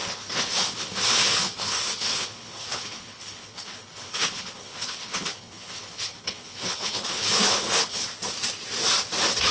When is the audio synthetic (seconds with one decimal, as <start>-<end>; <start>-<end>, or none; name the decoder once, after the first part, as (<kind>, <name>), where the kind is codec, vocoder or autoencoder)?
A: 0.0-8.0 (codec, HILCodec)